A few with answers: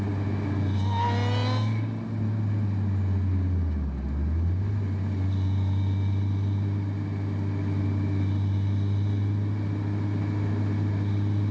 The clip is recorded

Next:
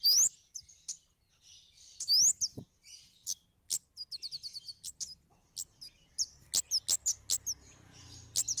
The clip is recorded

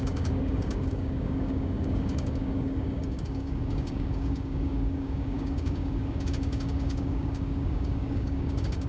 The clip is remade